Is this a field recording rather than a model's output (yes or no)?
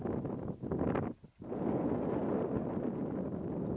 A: yes